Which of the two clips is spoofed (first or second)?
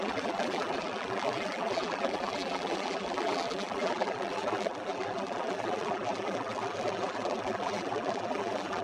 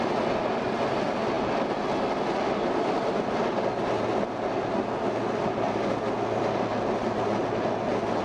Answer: first